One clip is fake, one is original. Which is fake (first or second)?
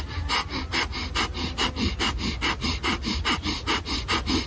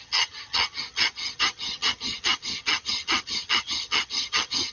second